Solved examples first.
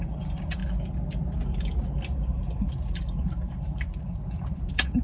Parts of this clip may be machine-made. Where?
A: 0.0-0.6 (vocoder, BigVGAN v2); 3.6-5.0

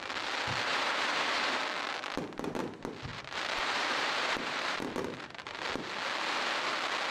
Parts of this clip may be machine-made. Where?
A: 0.7-1.6 (vocoder, BigVGAN v2); 3.1-5.7

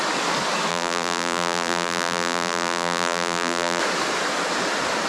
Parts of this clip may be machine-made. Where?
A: 0.7-3.8 (vocoder, BigVGAN v2)

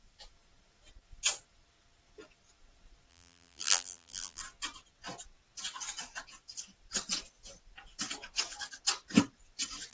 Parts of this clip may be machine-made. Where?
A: 3.1-4.4 (vocoder, BigVGAN v2)

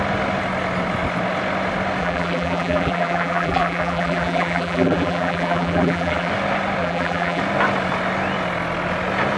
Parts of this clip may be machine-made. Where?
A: 2.0-6.3 (vocoder, BigVGAN v2); 6.8-7.4